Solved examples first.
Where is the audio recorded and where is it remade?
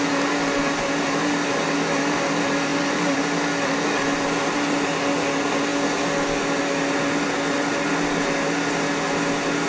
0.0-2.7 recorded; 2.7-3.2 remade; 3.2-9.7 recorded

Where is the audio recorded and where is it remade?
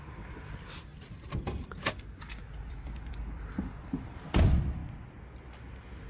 0.0-4.8 remade; 4.8-6.1 recorded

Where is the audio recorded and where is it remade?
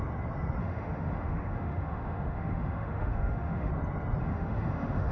0.0-0.6 recorded; 0.6-3.7 remade; 3.7-4.2 recorded; 4.2-5.1 remade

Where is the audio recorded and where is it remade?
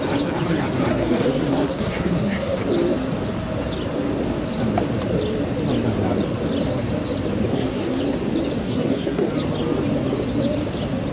0.0-0.9 recorded; 0.9-2.6 remade; 2.6-7.5 recorded; 7.5-8.0 remade; 8.0-8.6 recorded; 8.6-9.3 remade; 9.3-11.1 recorded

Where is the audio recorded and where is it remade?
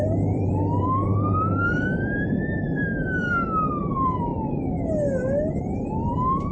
0.0-4.3 remade; 4.3-5.5 recorded; 5.5-6.5 remade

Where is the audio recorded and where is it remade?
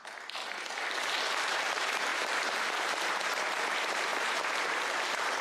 0.0-0.4 remade; 0.4-1.4 recorded; 1.4-5.4 remade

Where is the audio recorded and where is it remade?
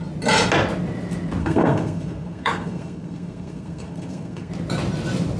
0.0-1.4 recorded; 1.4-4.5 remade; 4.5-5.4 recorded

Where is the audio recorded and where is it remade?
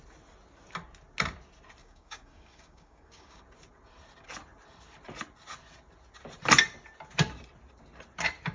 0.0-1.8 recorded; 1.8-3.4 remade; 3.4-8.5 recorded